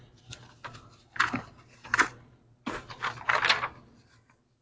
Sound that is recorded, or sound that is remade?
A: recorded